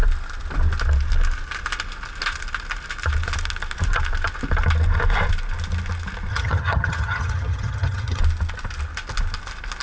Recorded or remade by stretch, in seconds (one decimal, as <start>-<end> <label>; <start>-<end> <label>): 0.0-6.3 recorded; 6.3-8.2 remade; 8.2-9.8 recorded